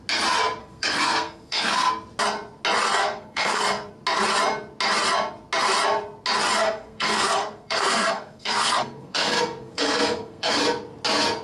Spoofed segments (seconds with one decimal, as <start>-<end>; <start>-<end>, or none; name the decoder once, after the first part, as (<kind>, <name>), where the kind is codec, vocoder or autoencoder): 0.6-1.9 (codec, SNAC); 3.0-3.9; 6.6-10.6

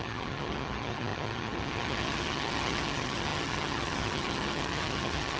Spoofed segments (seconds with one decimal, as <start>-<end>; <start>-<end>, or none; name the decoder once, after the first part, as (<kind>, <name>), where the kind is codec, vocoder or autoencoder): 0.0-5.4 (vocoder, HiFi-GAN)